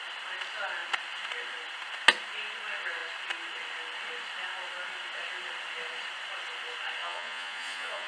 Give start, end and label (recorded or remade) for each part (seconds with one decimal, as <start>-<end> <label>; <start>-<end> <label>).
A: 0.0-7.0 recorded; 7.0-8.1 remade